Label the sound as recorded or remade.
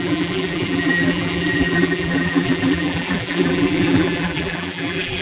remade